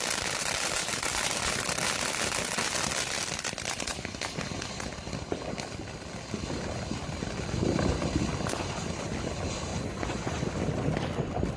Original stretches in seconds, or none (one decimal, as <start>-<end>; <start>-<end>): 0.0-9.7; 10.5-11.6